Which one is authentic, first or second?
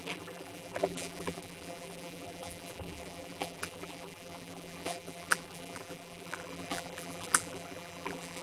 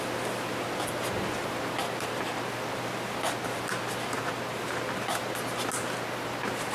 second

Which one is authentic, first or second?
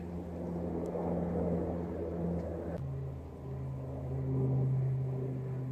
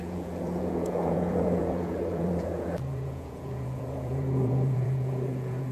first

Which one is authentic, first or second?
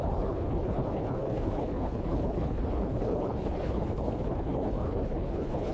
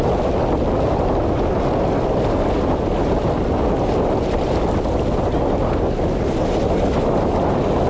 second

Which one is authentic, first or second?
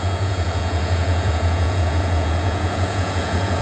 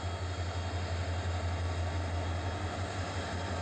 second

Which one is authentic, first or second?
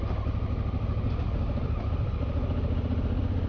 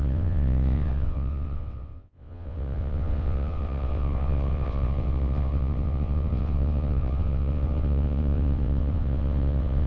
first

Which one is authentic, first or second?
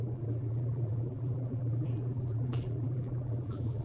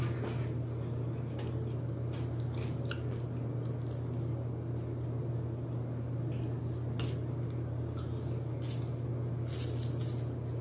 second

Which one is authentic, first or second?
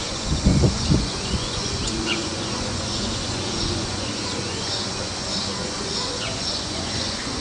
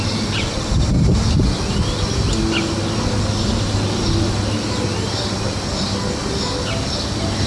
second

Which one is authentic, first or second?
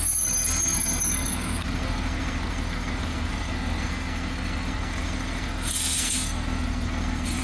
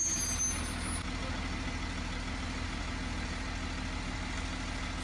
second